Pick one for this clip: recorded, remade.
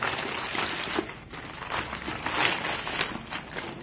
recorded